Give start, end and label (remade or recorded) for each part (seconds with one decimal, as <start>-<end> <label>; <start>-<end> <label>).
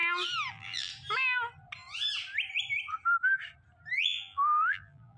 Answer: 0.0-0.5 recorded; 0.5-0.9 remade; 0.9-4.0 recorded; 4.0-5.2 remade